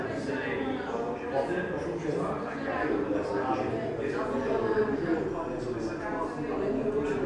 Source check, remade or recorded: recorded